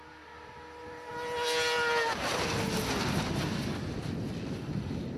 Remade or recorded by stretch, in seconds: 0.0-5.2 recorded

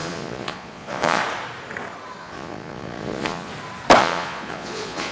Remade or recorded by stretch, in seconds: 0.0-1.2 remade; 1.2-2.2 recorded; 2.2-3.5 remade; 3.5-4.0 recorded; 4.0-5.1 remade

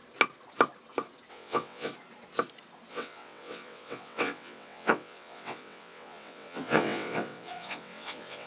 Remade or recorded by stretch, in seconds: 0.0-1.3 recorded; 1.3-1.9 remade; 1.9-2.9 recorded; 2.9-8.5 remade

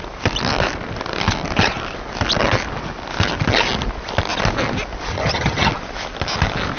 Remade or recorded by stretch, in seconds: 0.0-5.1 recorded; 5.1-5.7 remade; 5.7-6.8 recorded